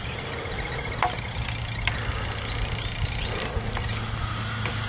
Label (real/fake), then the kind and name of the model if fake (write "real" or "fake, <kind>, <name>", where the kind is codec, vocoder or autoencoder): real